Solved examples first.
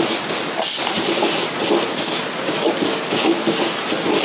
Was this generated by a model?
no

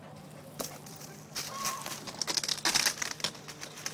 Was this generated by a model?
no